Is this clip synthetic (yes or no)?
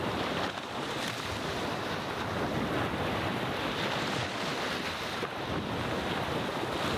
no